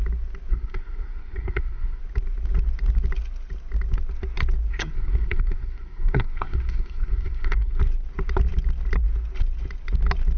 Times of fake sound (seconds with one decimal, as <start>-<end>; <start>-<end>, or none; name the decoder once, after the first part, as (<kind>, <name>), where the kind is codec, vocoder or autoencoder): 0.5-2.0 (codec, SNAC); 4.7-7.8

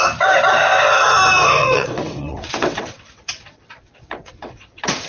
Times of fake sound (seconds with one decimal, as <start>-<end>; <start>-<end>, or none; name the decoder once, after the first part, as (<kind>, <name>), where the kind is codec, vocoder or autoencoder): 1.6-5.1 (vocoder, WaveNeXt)

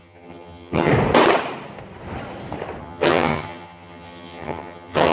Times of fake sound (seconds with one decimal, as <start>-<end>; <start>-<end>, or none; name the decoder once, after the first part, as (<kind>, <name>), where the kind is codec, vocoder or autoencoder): 0.0-0.9 (vocoder, HiFi-GAN); 2.8-5.1

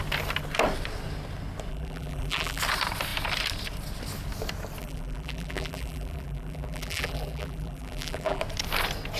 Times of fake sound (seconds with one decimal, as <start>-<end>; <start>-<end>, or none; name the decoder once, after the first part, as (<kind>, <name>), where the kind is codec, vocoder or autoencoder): 1.7-2.6 (vocoder, BigVGAN v2); 4.8-8.4

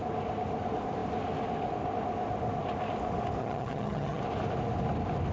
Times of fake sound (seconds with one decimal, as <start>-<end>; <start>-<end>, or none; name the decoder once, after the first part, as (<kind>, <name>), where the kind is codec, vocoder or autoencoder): 3.4-4.2 (vocoder, HiFi-GAN)

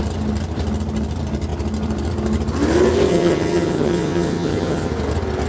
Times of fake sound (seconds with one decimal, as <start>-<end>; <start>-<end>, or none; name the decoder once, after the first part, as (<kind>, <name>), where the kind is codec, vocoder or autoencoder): 3.1-4.9 (vocoder, HiFi-GAN)